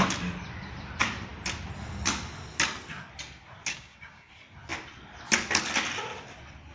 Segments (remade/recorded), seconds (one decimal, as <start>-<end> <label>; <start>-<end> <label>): 0.0-3.7 recorded; 3.7-4.3 remade; 4.3-6.7 recorded